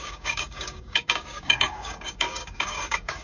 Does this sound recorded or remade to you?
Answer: remade